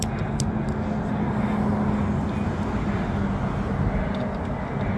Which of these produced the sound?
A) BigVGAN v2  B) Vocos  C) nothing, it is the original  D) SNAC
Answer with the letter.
C